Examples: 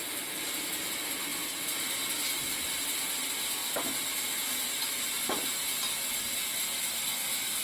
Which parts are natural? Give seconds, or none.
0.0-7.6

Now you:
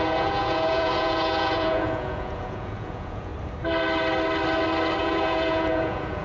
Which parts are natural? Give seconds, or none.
3.3-5.0

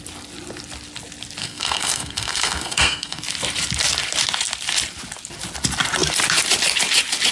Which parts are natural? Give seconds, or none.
0.0-1.4; 3.2-7.3

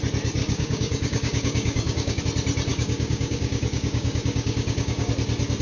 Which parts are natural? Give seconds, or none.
0.0-0.4; 2.2-2.7; 5.1-5.6

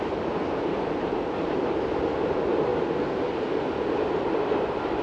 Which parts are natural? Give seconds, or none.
0.0-5.0

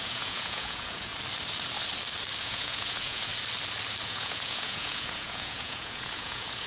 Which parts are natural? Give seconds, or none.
1.1-2.4; 3.3-4.0

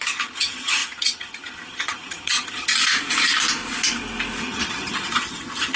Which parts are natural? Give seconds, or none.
2.7-4.4

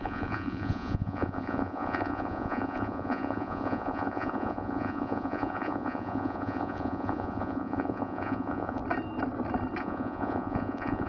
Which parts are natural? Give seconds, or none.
8.8-9.8